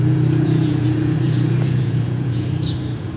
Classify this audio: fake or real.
fake